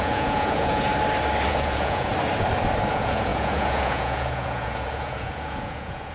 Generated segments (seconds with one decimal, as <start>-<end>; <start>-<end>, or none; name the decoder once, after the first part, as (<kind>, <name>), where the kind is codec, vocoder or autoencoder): 0.0-0.9 (vocoder, Vocos); 1.5-2.1; 2.9-6.1